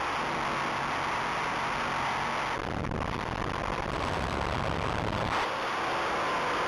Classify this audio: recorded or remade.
recorded